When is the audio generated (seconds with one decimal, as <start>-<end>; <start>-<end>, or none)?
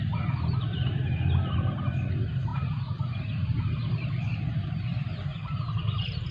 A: 0.0-6.3